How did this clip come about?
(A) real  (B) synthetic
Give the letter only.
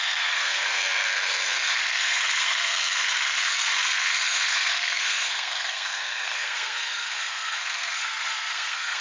B